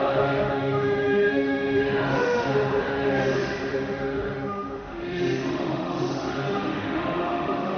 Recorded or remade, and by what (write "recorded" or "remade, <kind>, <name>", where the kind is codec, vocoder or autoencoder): remade, autoencoder, DAC-VAE